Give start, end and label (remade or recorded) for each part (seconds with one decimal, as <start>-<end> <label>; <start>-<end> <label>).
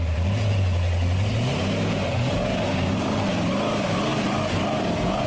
0.0-5.3 recorded